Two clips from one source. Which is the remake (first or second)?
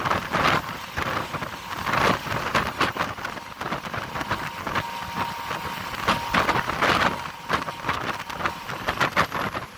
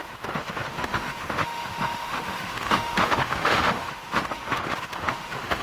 second